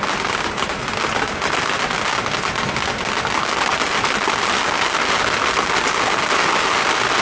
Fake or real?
real